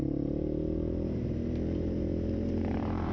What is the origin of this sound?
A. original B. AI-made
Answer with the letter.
B